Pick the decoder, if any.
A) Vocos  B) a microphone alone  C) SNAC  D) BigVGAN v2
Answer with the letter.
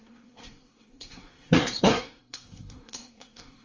C